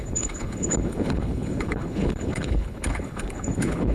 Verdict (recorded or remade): remade